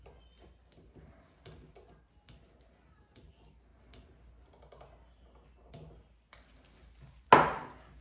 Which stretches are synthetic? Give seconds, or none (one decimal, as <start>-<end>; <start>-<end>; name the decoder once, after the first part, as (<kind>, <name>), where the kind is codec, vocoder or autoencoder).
none